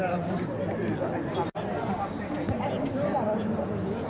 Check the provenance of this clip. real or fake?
real